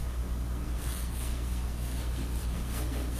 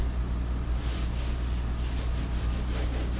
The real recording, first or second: second